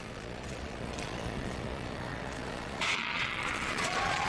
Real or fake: fake